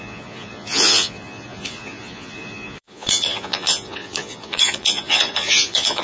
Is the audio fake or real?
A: fake